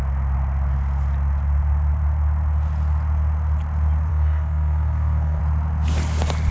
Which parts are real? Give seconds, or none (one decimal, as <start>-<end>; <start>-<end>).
0.0-4.1; 5.4-6.5